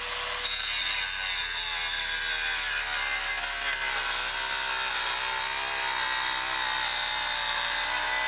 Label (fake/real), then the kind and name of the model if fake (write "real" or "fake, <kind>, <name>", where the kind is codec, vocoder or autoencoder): real